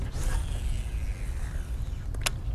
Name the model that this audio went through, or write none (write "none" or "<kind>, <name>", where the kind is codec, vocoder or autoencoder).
none